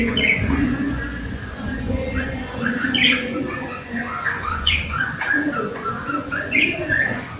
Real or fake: fake